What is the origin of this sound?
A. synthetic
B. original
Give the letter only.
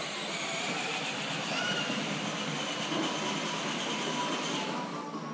B